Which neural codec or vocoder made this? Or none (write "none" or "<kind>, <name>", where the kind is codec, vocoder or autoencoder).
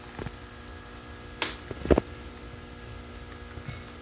none